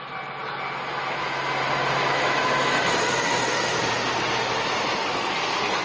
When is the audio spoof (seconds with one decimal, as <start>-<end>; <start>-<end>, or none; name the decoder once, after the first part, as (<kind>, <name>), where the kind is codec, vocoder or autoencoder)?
5.0-5.8 (codec, SNAC)